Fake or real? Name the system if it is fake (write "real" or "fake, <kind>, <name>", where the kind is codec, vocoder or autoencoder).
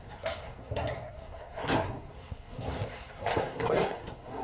fake, codec, SNAC